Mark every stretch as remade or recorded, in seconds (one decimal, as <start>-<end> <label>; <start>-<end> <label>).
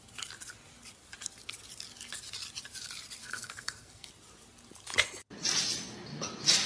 0.0-3.2 recorded; 3.2-4.1 remade; 4.1-6.7 recorded